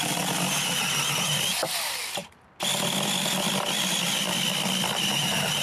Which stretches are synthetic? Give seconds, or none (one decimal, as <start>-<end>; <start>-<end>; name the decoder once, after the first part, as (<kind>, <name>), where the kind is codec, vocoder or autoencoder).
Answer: 0.0-2.2 (vocoder, BigVGAN v2); 4.0-5.6